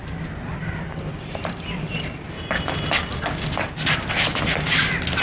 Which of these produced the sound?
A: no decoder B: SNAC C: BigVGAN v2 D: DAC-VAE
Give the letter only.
A